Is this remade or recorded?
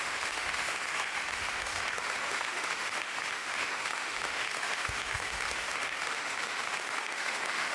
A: remade